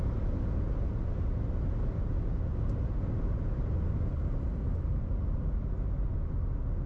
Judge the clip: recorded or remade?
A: recorded